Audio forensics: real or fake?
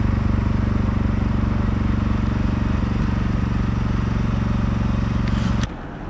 real